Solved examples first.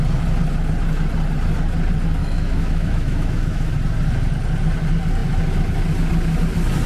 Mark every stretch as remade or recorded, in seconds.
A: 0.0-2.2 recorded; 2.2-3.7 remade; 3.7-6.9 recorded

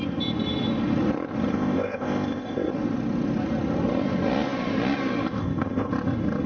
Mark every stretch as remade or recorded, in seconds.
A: 0.0-1.5 recorded; 1.5-2.7 remade; 2.7-5.4 recorded; 5.4-5.9 remade; 5.9-6.5 recorded

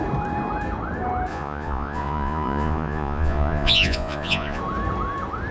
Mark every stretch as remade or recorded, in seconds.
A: 0.0-1.3 recorded; 1.3-4.6 remade; 4.6-5.5 recorded

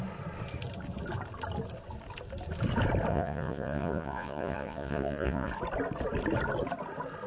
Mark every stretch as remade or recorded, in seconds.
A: 0.0-3.1 recorded; 3.1-5.5 remade; 5.5-7.3 recorded

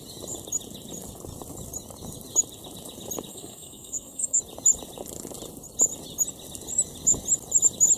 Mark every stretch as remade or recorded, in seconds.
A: 0.0-3.3 recorded; 3.3-4.4 remade; 4.4-8.0 recorded

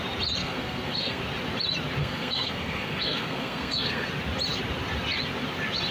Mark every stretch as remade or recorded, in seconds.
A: 0.0-0.4 recorded; 0.4-1.2 remade; 1.2-2.0 recorded; 2.0-4.1 remade; 4.1-5.9 recorded

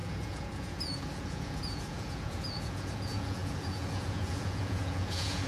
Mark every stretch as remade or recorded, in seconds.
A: 0.0-5.5 remade

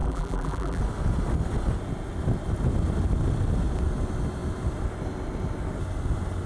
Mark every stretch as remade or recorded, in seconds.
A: 0.0-0.8 remade; 0.8-6.5 recorded